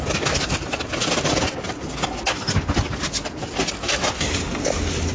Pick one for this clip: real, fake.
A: real